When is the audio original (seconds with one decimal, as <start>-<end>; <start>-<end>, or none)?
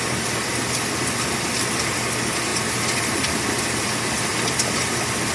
0.0-5.3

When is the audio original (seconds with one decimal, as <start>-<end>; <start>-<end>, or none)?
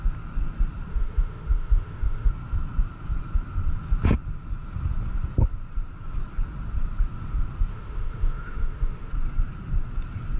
0.0-0.9; 2.3-7.7; 9.1-10.4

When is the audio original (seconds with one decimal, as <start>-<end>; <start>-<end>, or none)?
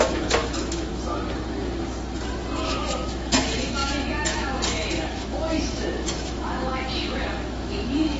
0.9-2.6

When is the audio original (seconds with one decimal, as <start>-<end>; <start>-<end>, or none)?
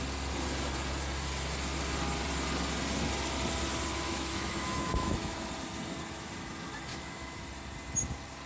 0.0-3.9; 5.5-6.9; 7.4-8.5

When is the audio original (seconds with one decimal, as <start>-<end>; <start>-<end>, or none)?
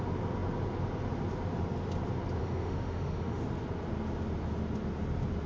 0.0-2.4; 3.4-5.5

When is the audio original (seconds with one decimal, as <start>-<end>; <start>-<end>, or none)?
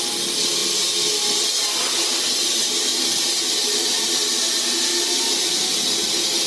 0.0-6.5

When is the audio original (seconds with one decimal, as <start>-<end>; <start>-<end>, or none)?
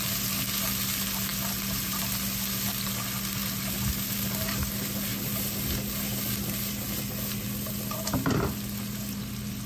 0.0-9.7